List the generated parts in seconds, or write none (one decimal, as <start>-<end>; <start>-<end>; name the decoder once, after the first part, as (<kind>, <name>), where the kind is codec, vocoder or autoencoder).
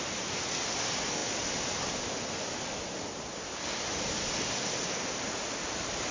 none